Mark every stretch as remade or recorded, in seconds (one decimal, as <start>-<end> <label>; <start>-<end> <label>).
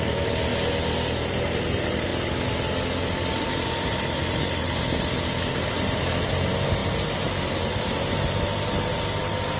0.0-0.5 remade; 0.5-1.3 recorded; 1.3-2.1 remade; 2.1-3.3 recorded; 3.3-9.6 remade